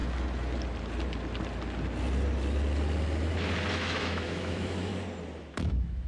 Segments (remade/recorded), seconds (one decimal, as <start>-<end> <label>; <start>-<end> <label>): 0.0-3.7 recorded; 3.7-4.9 remade; 4.9-5.4 recorded; 5.4-6.1 remade